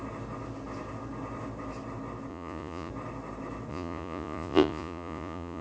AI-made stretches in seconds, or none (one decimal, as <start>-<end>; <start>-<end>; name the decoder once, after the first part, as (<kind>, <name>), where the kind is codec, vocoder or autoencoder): 2.3-2.9 (vocoder, Vocos); 3.7-5.6